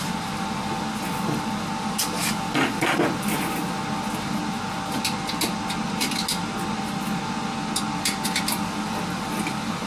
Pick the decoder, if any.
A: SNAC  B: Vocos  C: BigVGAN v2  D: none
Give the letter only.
D